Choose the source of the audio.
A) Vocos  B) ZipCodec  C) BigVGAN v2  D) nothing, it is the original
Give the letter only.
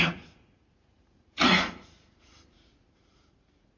A